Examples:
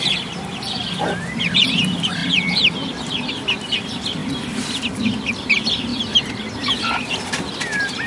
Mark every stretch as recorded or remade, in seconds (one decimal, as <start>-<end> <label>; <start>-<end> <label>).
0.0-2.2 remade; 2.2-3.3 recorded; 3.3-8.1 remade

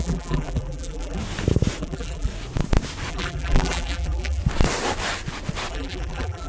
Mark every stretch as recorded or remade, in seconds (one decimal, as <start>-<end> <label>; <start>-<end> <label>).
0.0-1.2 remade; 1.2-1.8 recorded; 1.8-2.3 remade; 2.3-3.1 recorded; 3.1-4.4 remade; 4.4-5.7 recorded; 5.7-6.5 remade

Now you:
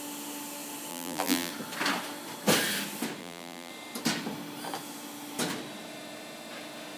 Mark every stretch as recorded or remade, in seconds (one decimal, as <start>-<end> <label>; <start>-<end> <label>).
0.0-0.9 recorded; 0.9-1.5 remade; 1.5-3.2 recorded; 3.2-3.7 remade; 3.7-7.0 recorded

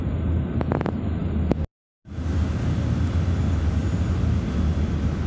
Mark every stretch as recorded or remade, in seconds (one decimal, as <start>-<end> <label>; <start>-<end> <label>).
0.0-5.3 recorded